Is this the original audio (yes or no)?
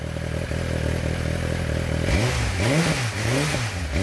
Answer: yes